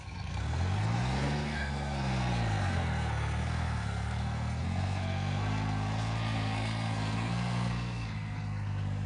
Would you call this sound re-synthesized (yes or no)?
yes